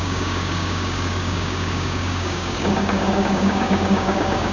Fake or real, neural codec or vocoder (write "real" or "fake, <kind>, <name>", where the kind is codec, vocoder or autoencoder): fake, codec, DAC